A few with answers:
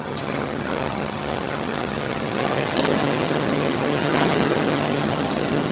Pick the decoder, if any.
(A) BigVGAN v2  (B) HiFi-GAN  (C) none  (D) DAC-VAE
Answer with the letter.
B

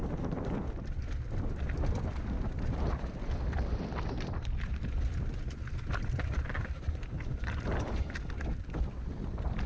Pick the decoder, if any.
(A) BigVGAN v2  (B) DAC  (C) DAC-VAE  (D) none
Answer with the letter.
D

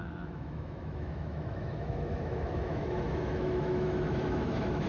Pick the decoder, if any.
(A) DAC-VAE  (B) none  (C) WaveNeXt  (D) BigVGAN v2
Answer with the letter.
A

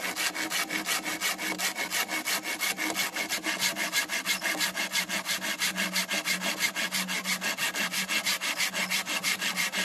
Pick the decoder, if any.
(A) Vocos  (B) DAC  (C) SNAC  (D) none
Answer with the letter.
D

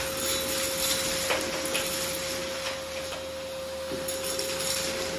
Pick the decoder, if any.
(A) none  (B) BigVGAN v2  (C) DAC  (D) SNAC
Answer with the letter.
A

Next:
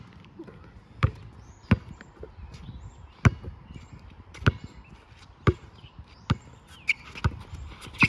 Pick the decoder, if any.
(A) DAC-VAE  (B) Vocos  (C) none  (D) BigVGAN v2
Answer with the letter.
C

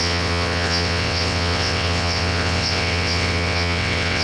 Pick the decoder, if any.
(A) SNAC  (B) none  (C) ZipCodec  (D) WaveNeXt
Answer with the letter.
D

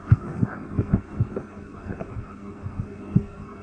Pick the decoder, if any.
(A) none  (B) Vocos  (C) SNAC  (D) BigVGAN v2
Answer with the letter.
C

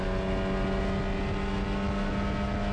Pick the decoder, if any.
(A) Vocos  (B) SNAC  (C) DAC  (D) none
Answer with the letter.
D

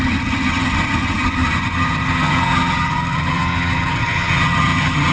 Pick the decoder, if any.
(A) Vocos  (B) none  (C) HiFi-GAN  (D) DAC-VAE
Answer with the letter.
C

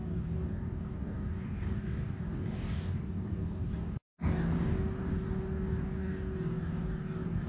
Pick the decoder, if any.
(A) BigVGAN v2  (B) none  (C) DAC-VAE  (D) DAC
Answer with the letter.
D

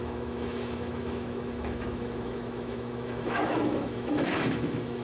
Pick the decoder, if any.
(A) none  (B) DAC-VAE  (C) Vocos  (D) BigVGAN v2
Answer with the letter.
B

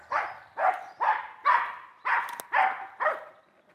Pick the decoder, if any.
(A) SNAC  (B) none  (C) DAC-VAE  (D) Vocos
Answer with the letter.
B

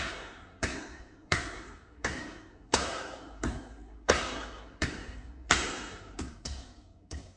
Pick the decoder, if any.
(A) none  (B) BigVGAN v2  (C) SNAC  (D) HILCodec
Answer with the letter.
C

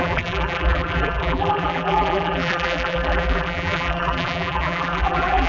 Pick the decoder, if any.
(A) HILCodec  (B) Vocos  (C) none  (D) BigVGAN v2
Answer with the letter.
D